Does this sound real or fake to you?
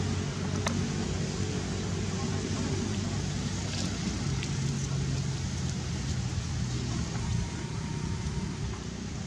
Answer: real